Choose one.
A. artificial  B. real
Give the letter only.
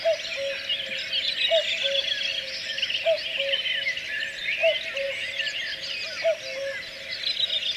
B